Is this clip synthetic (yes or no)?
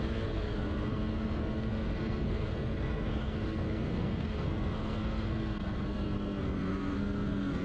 yes